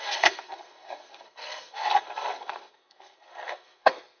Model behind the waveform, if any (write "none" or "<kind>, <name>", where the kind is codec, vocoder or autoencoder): codec, SNAC